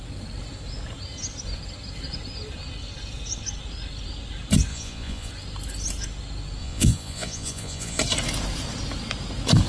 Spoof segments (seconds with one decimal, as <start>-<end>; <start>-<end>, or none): 4.7-5.3; 6.6-8.0